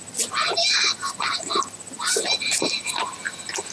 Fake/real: real